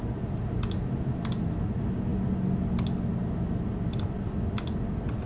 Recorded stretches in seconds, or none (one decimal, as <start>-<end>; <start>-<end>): 0.0-5.3